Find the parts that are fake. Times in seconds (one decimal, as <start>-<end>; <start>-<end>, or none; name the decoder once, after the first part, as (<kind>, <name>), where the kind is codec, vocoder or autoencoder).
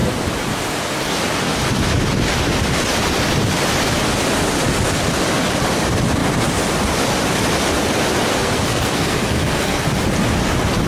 8.3-9.8 (codec, SNAC)